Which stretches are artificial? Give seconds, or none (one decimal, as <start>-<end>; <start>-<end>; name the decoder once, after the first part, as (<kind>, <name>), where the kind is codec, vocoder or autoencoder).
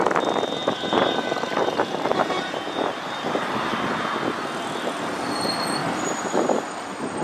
0.6-2.6 (vocoder, BigVGAN v2); 5.8-6.6